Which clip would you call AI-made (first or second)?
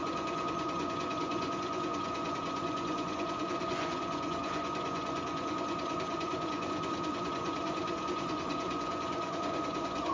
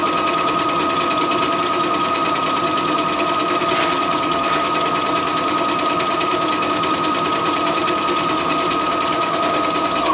first